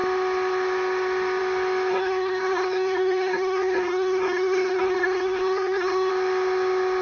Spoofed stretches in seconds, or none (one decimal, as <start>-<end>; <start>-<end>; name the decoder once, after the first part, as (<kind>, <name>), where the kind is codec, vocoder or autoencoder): 1.9-6.1 (codec, SNAC)